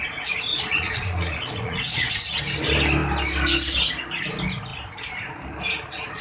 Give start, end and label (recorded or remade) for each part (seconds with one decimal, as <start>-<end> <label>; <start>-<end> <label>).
0.0-0.5 recorded; 0.5-2.1 remade; 2.1-6.2 recorded